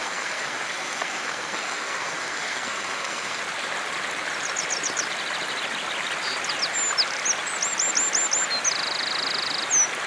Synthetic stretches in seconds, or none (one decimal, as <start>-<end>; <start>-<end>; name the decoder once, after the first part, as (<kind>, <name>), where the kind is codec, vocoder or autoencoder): 0.0-3.4 (codec, SNAC)